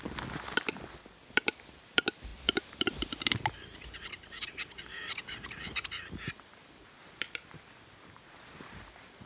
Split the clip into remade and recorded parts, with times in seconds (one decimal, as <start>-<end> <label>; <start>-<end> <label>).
0.0-9.3 remade